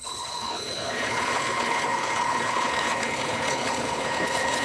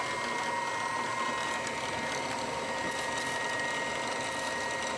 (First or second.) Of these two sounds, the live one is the second